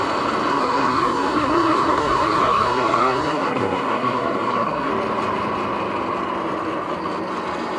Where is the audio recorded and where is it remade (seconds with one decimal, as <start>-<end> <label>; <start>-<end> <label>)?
0.0-0.5 recorded; 0.5-4.9 remade; 4.9-7.8 recorded